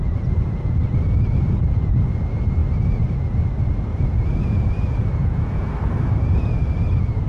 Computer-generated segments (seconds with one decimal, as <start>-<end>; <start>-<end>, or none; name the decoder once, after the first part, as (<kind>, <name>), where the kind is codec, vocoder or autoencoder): 5.2-5.7 (vocoder, Vocos)